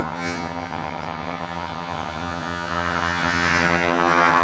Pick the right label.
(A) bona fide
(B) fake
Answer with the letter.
B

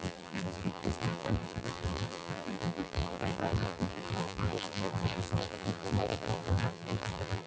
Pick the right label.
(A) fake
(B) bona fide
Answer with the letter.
A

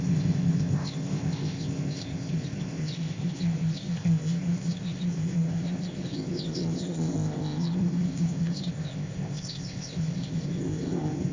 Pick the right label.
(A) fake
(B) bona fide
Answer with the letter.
A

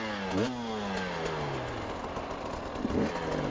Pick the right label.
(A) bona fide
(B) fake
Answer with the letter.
A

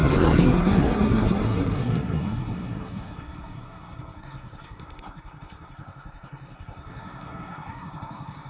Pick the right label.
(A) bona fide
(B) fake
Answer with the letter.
B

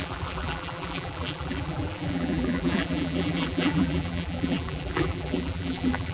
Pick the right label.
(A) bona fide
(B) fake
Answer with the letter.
B